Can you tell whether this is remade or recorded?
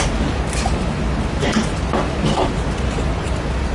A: recorded